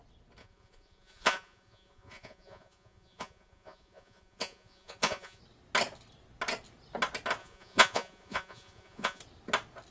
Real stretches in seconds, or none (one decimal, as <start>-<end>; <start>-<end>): 0.0-0.4; 5.4-7.4; 9.2-9.9